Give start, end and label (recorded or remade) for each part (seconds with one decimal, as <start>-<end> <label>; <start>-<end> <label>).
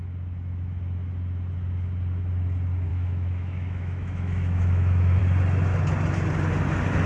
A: 0.0-2.9 recorded; 2.9-5.2 remade; 5.2-7.1 recorded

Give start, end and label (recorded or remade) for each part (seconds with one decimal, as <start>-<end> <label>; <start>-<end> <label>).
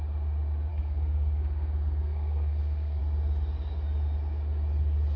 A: 0.0-0.7 recorded; 0.7-3.0 remade; 3.0-5.2 recorded